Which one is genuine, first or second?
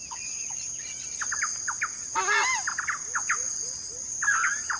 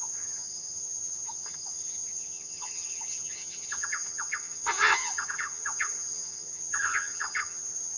first